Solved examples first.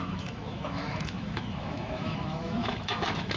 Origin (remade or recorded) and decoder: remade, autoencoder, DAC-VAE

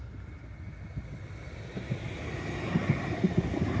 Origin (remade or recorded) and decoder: recorded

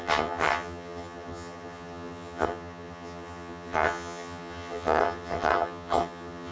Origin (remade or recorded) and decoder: remade, vocoder, HiFi-GAN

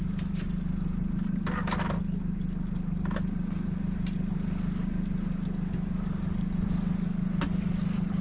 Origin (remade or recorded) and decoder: recorded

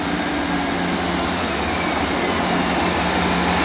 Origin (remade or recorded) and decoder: recorded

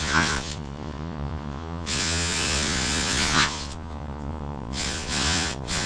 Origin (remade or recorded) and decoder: remade, vocoder, Vocos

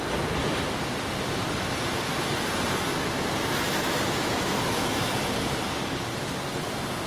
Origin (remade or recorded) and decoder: recorded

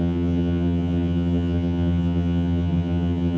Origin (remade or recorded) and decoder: remade, vocoder, HiFi-GAN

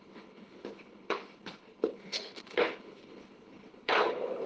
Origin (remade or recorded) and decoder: remade, codec, HILCodec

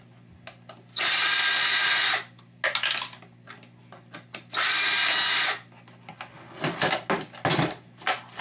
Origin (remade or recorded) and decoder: recorded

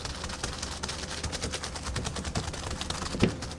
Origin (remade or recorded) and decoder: recorded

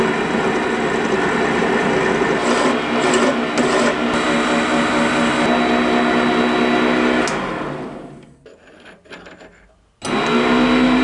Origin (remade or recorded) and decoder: recorded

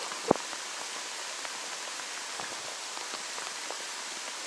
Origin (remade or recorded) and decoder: recorded